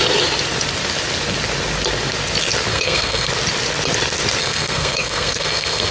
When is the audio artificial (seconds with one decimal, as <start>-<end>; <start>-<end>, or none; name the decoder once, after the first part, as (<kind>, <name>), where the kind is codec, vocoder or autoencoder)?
2.7-3.3 (codec, SNAC); 4.4-5.9